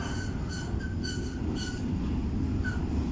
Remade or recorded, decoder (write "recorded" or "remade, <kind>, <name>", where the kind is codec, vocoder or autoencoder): recorded